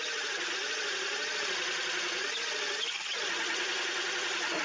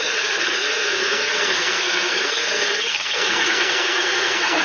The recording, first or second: first